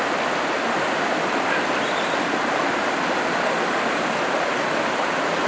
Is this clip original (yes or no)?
yes